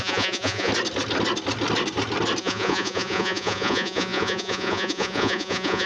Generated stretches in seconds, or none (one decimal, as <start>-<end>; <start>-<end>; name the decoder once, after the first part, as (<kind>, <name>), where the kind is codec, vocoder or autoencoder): 0.0-0.7 (vocoder, Vocos); 2.4-5.9

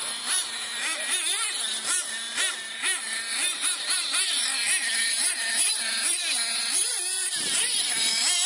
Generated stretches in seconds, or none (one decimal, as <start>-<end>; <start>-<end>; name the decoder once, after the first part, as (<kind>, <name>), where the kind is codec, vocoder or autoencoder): none

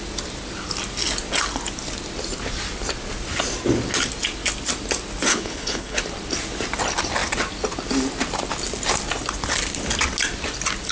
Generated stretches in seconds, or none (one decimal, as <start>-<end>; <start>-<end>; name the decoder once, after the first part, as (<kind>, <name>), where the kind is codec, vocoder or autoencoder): 5.3-6.0 (codec, HILCodec)

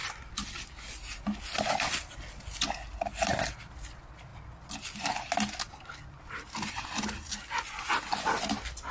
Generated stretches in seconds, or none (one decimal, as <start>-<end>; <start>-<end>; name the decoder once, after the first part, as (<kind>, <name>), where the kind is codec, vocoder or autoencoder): none

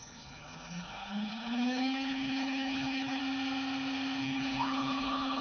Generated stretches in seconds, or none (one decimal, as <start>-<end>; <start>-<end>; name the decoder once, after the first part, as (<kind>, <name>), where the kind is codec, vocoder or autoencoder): 0.0-3.2 (codec, HILCodec); 4.2-5.4

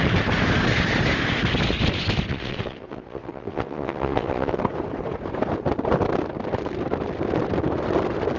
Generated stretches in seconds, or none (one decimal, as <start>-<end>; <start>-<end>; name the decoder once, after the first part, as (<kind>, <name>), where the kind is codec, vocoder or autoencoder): 2.3-4.6 (vocoder, WaveNeXt)

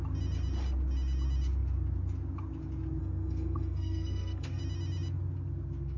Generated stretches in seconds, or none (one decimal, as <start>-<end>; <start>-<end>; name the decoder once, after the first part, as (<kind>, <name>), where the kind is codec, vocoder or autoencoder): 3.0-4.6 (codec, SNAC)